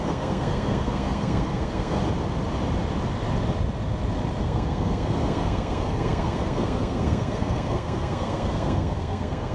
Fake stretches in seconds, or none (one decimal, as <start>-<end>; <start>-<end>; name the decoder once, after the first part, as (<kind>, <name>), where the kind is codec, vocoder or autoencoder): 0.0-2.0 (codec, SNAC); 4.4-9.5